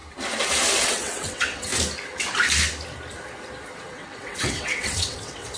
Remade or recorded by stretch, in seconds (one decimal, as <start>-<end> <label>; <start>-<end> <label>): 0.0-0.8 recorded; 0.8-1.7 remade; 1.7-3.9 recorded; 3.9-5.6 remade